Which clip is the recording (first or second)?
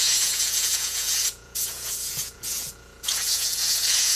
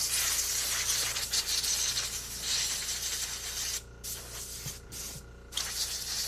second